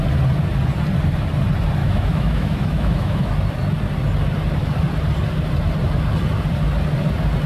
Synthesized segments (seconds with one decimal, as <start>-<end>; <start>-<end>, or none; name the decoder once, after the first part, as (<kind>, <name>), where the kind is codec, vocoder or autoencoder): 1.8-3.3 (autoencoder, DAC-VAE)